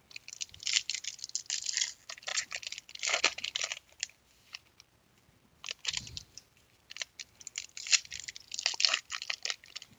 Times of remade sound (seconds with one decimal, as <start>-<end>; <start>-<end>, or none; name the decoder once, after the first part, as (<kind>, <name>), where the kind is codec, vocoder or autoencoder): 3.7-5.6 (vocoder, BigVGAN v2)